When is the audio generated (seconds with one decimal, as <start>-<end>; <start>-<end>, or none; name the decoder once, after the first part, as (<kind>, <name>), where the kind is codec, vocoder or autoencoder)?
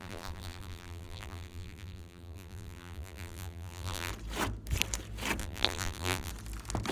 0.0-4.1 (vocoder, BigVGAN v2); 5.4-6.3